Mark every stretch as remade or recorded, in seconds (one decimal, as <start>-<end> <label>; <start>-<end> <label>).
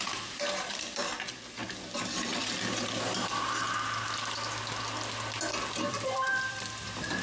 0.0-1.6 remade; 1.6-5.9 recorded; 5.9-7.2 remade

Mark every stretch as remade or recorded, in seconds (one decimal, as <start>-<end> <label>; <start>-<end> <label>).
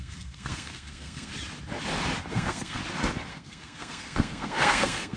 0.0-1.3 remade; 1.3-2.3 recorded; 2.3-2.8 remade; 2.8-3.3 recorded; 3.3-5.2 remade